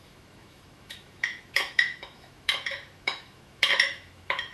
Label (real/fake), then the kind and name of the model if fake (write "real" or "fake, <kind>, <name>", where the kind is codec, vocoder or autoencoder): fake, autoencoder, DAC-VAE